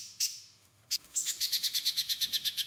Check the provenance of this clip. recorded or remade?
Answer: remade